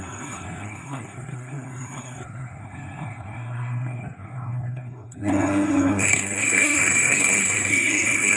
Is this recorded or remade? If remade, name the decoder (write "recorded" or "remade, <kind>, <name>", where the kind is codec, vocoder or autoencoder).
remade, codec, SNAC